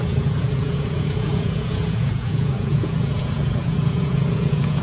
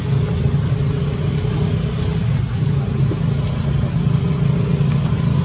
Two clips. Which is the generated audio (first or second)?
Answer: first